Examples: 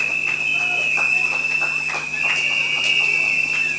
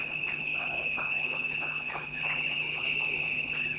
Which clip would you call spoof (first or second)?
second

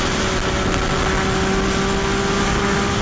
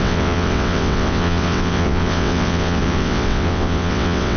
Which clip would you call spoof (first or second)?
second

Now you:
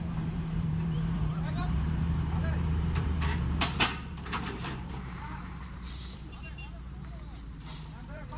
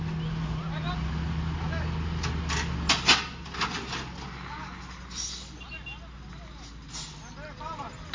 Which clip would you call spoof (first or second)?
first